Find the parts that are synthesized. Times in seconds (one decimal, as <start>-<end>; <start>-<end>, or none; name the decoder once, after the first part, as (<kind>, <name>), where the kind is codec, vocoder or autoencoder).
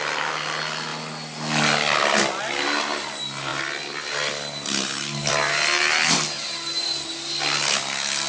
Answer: none